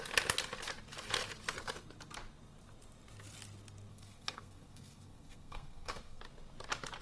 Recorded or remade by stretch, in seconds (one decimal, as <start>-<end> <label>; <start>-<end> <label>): 0.0-3.9 recorded; 3.9-6.2 remade; 6.2-7.0 recorded